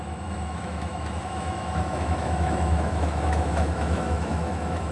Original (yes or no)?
no